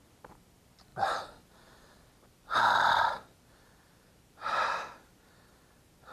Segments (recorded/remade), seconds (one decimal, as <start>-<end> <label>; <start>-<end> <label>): 0.0-0.9 recorded; 0.9-4.6 remade; 4.6-6.1 recorded